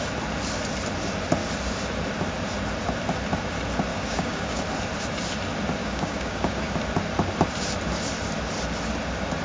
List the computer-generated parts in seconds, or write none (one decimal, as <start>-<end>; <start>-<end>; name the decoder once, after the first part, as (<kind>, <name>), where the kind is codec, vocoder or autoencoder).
3.9-4.6 (codec, DAC); 5.8-6.6